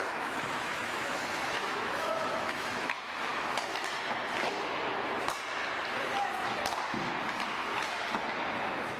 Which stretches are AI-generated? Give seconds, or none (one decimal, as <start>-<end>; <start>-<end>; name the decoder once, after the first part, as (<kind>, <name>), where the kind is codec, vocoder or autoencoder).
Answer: 0.0-3.3 (autoencoder, DAC-VAE); 8.5-9.0

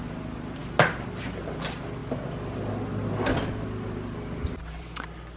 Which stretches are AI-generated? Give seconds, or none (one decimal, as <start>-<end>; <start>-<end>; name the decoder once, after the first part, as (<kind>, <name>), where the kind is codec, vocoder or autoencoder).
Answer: none